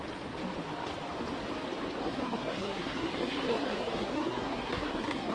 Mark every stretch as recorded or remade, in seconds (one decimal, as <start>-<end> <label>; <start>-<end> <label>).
0.0-2.0 recorded; 2.0-5.3 remade